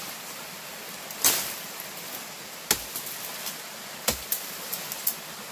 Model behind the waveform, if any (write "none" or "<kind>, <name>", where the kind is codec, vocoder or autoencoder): none